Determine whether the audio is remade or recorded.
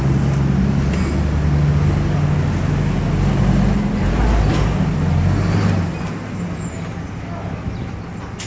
recorded